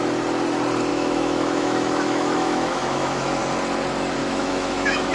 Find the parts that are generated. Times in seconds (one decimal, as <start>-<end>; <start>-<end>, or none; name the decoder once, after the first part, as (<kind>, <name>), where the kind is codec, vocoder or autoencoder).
0.9-3.4 (autoencoder, DAC-VAE); 4.2-5.1